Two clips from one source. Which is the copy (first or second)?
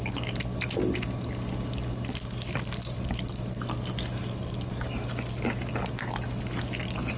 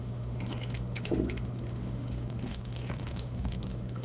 second